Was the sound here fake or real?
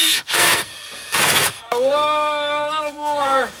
fake